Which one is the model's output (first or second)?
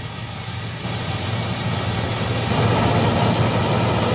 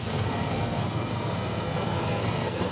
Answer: second